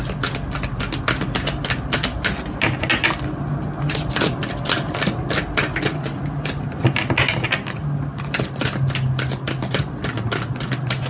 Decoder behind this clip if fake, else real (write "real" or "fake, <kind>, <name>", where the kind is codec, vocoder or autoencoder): real